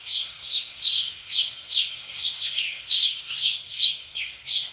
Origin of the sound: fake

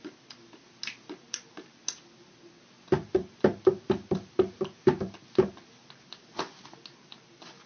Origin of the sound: real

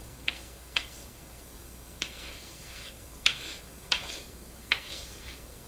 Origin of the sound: fake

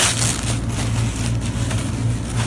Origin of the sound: real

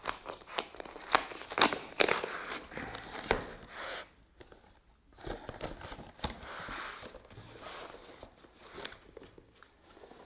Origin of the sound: real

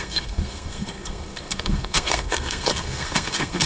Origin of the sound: fake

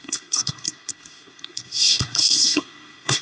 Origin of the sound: fake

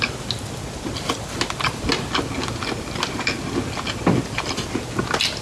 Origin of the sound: real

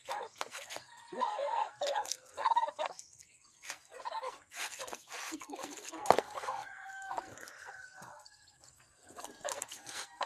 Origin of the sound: fake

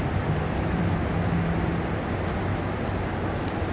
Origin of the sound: real